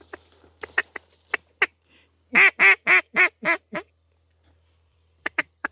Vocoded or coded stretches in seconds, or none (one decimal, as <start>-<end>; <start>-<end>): 4.9-5.7